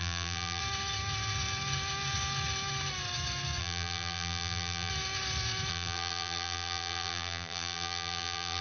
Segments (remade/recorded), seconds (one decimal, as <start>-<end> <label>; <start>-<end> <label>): 0.0-0.6 remade; 0.6-3.6 recorded; 3.6-4.9 remade; 4.9-5.7 recorded; 5.7-8.6 remade